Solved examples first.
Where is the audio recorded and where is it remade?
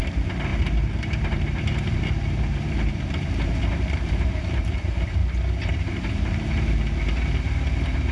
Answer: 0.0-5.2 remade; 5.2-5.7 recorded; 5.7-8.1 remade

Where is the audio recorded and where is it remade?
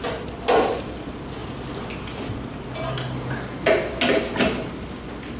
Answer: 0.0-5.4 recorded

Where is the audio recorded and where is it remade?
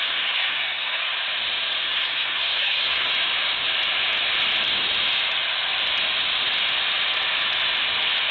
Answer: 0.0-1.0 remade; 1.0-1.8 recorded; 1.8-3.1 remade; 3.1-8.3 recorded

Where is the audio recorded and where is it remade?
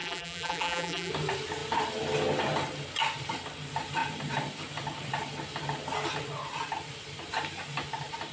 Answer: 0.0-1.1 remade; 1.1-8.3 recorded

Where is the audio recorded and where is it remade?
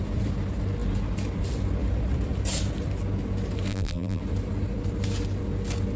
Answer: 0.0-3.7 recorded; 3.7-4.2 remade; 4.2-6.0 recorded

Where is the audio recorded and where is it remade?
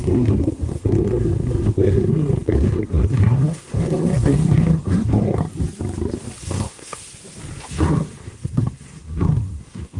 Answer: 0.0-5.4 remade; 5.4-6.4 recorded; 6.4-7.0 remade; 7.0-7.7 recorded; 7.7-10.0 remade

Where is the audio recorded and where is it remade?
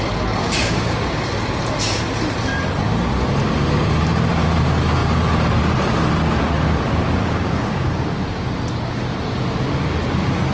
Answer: 0.0-0.4 recorded; 0.4-1.2 remade; 1.2-7.2 recorded; 7.2-8.6 remade; 8.6-10.5 recorded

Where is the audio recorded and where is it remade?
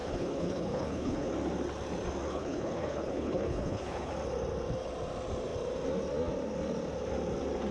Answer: 0.0-1.3 remade; 1.3-2.3 recorded; 2.3-4.1 remade; 4.1-7.7 recorded